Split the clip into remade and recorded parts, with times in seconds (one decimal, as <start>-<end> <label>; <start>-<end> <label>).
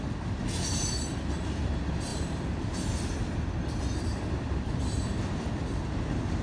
0.0-6.4 recorded